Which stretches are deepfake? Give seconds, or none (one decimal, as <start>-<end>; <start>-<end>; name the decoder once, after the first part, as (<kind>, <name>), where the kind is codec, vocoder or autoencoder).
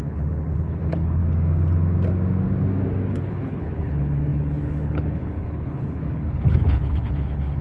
0.0-1.2 (codec, HILCodec); 3.1-7.6